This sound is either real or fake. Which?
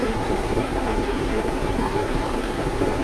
fake